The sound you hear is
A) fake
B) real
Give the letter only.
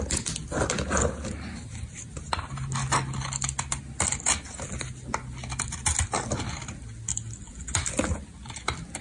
B